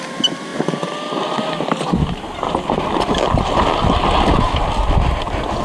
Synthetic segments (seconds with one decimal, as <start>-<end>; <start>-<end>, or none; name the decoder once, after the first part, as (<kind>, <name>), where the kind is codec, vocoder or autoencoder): none